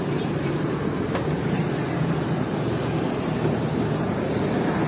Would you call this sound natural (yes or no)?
no